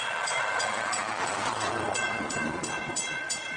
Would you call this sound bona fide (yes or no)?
no